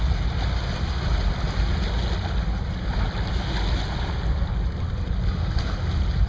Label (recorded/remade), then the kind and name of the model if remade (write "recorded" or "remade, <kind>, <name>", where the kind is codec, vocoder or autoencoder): recorded